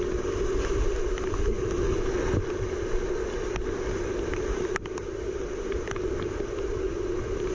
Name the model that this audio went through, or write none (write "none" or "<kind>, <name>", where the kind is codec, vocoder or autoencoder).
none